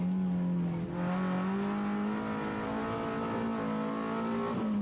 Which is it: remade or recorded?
recorded